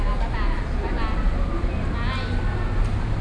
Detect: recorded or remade recorded